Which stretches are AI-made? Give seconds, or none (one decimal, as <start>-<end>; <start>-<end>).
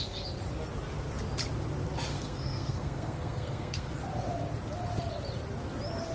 2.1-3.9